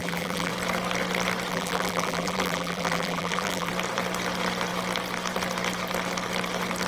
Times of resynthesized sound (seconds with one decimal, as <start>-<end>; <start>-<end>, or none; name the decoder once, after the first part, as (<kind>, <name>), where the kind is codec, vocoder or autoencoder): 0.0-0.5 (vocoder, BigVGAN v2); 1.5-3.7